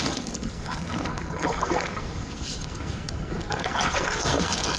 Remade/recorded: remade